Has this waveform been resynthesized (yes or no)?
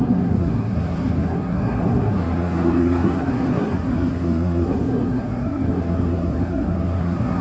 yes